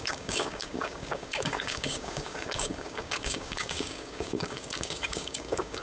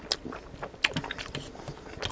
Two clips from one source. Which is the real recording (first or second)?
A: second